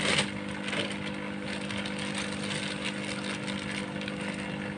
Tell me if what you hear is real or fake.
real